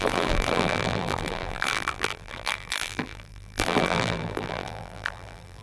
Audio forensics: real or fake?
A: fake